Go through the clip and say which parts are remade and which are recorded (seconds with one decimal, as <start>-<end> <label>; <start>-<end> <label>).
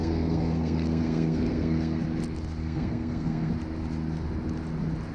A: 0.0-2.0 remade; 2.0-2.6 recorded; 2.6-3.5 remade; 3.5-5.1 recorded